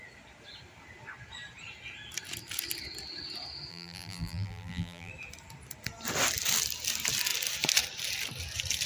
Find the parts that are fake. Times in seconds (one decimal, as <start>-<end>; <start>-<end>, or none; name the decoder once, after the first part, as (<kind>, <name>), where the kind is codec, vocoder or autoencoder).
3.7-5.1 (vocoder, BigVGAN v2)